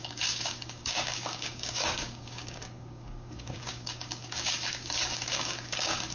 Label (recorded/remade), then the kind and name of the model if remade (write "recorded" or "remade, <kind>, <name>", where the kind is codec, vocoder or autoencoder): remade, codec, DAC